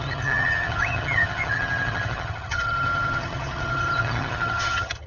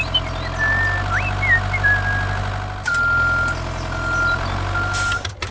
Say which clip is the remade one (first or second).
first